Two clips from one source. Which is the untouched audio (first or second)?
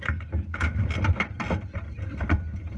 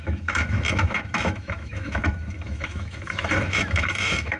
first